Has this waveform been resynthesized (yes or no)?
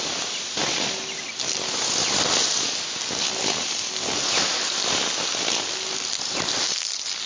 no